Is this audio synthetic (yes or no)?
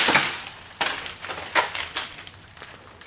no